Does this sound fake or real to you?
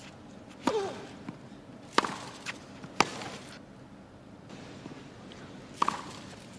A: real